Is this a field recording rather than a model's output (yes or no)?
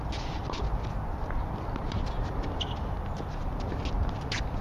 yes